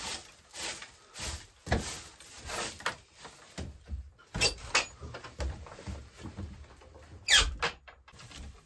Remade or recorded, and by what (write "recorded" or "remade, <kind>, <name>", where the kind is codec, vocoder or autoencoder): recorded